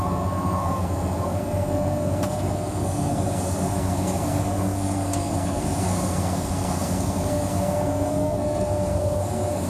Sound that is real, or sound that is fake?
fake